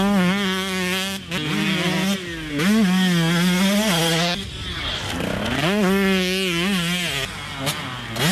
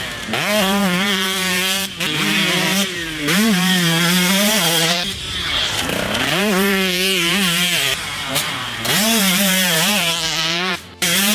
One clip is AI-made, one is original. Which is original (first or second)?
first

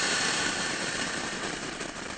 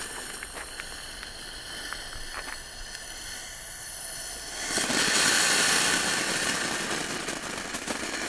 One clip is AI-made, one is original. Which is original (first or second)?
second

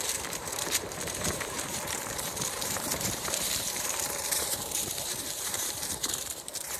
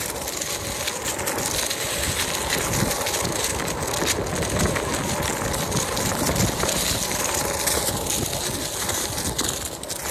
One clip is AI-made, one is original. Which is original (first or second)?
second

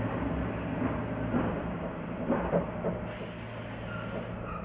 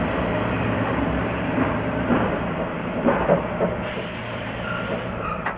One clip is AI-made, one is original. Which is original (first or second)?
first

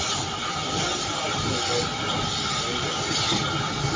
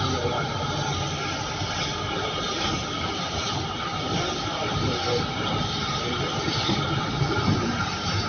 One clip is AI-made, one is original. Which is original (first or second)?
first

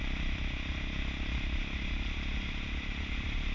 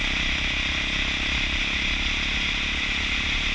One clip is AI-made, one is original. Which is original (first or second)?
second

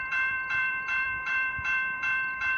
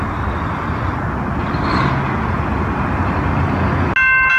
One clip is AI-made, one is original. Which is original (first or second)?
second